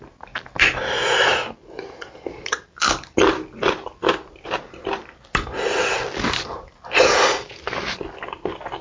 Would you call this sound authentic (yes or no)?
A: yes